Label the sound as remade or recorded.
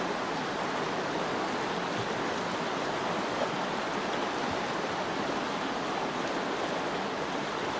recorded